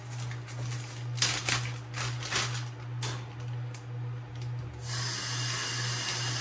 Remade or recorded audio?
recorded